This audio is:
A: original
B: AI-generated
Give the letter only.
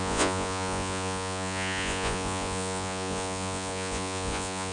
B